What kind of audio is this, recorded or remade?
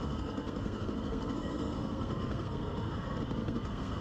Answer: remade